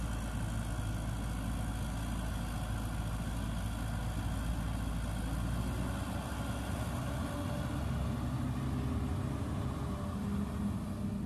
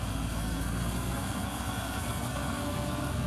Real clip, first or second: first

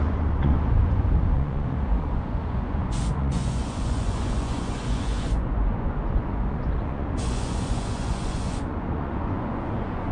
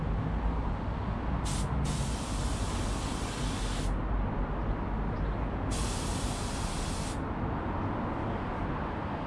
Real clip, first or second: second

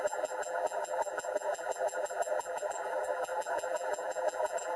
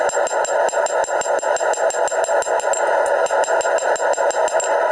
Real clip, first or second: second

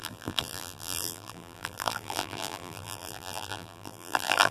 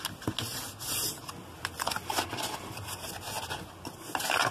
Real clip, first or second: second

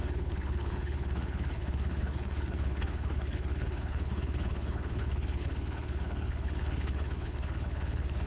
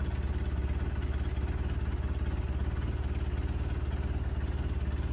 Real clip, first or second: second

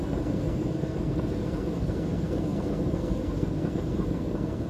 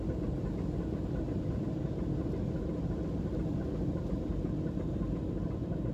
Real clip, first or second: second